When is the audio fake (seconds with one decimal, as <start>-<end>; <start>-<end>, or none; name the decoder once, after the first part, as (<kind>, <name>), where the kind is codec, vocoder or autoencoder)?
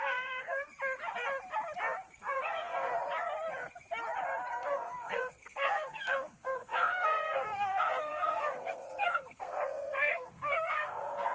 0.0-0.7 (codec, SNAC); 2.2-2.9; 4.5-11.3